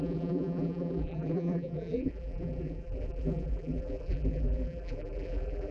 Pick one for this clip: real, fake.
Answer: fake